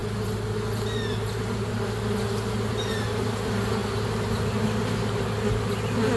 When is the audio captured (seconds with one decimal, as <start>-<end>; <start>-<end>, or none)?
0.0-6.2